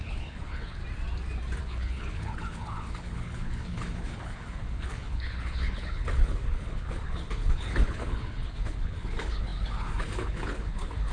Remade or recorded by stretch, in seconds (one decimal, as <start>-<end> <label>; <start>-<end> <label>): 0.0-0.8 remade; 0.8-1.6 recorded; 1.6-11.1 remade